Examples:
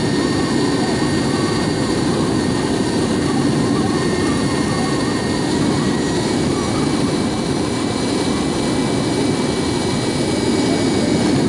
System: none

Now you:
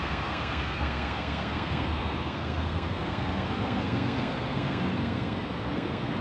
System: codec, SNAC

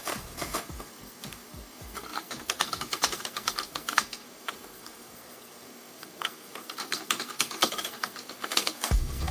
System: codec, SNAC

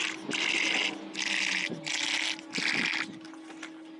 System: none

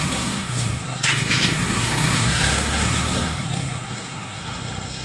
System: codec, SNAC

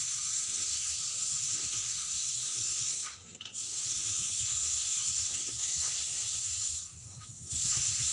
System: codec, SNAC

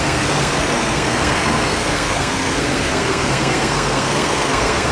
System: codec, SNAC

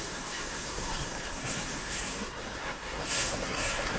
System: codec, SNAC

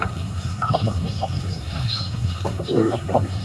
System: codec, SNAC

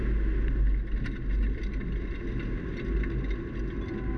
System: none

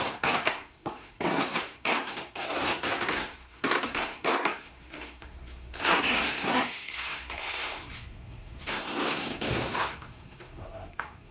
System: codec, SNAC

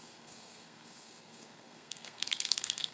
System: codec, SNAC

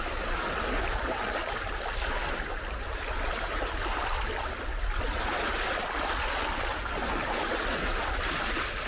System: none